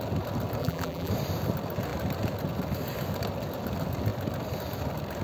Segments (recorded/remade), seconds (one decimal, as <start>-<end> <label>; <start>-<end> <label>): 0.0-0.6 recorded; 0.6-1.1 remade; 1.1-5.2 recorded